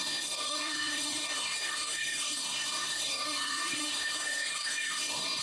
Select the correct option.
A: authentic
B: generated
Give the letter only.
B